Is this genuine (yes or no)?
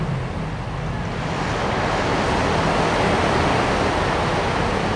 yes